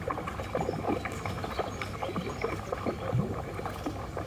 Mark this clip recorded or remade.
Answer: recorded